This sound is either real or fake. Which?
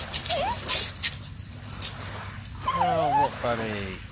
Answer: real